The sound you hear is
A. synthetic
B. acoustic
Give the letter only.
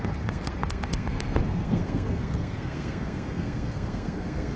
A